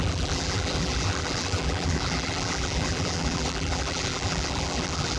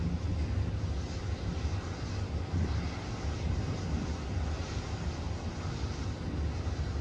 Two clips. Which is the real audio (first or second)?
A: second